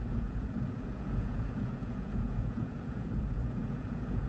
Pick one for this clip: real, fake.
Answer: fake